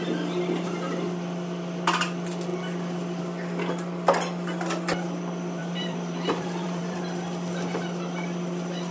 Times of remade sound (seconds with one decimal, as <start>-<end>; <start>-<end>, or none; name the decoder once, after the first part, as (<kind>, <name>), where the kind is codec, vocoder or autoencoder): 5.6-7.0 (vocoder, BigVGAN v2)